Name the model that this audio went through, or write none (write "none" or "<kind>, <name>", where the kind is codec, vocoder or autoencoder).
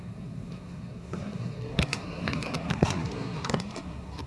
codec, SNAC